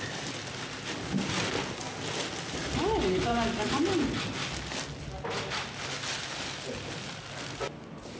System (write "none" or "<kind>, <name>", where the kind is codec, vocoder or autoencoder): none